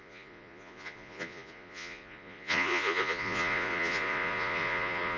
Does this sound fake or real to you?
fake